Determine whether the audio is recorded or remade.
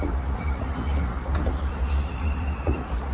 remade